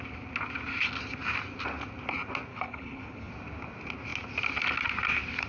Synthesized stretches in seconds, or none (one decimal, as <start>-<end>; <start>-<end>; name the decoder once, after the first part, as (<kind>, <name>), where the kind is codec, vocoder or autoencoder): 2.5-3.3 (codec, HILCodec)